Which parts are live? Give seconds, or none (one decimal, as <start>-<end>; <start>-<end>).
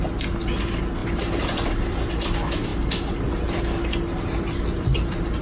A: 0.0-5.4